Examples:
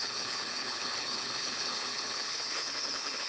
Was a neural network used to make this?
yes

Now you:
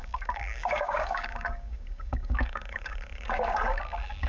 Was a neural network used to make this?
yes